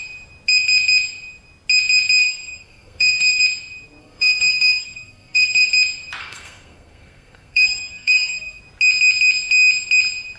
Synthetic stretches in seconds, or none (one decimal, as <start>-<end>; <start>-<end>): 2.2-3.4; 4.0-5.7; 6.2-8.6